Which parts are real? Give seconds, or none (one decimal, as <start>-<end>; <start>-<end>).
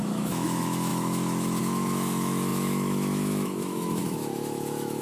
none